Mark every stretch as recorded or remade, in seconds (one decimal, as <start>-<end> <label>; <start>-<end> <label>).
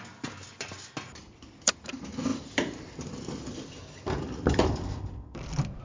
0.0-1.2 recorded; 1.2-1.8 remade; 1.8-2.3 recorded; 2.3-5.8 remade